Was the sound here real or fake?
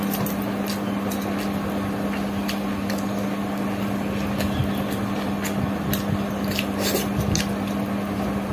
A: real